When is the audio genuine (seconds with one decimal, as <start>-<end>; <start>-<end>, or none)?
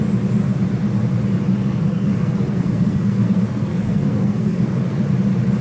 0.0-1.6; 5.0-5.6